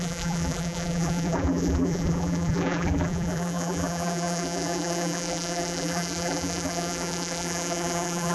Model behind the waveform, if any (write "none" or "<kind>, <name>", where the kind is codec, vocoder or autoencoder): vocoder, BigVGAN v2